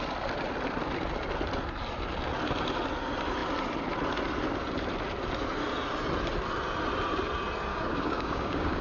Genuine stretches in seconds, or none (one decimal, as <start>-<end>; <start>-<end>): 0.0-7.7